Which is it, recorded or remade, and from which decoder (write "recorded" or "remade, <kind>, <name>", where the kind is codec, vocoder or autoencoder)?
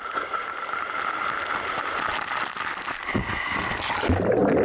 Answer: recorded